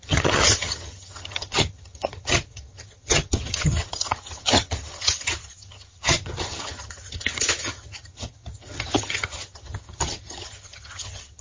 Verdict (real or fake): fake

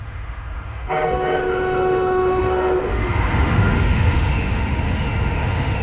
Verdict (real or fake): fake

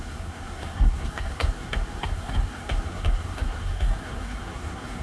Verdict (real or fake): fake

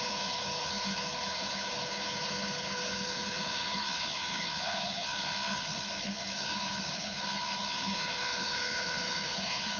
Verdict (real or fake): fake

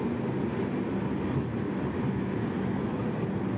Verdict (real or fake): real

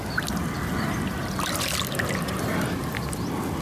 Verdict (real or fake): real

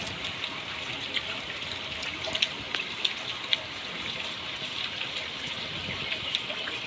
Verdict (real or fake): real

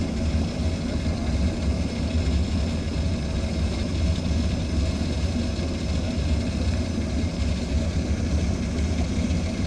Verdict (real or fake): real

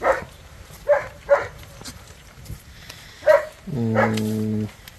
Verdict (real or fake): fake